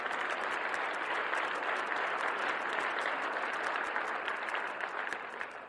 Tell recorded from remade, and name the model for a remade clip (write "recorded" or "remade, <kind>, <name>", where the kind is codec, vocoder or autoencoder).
recorded